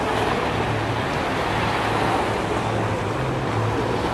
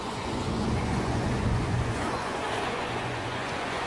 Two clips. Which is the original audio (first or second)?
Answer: first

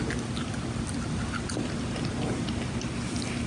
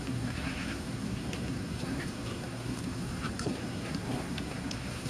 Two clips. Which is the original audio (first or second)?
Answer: first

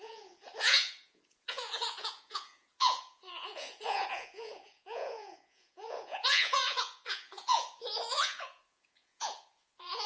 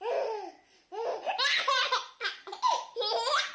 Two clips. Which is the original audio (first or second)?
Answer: second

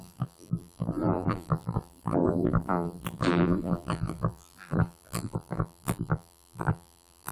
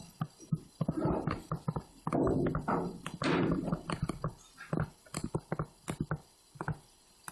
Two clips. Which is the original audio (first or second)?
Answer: second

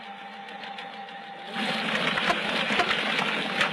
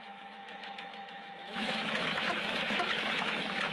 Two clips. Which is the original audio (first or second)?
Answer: first